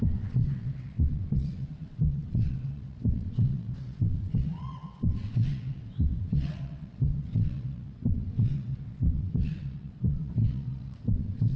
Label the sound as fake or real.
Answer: fake